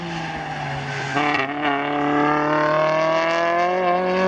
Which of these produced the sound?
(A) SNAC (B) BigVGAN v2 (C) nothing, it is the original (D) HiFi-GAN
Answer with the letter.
C